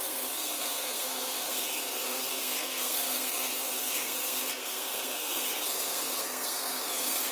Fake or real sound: fake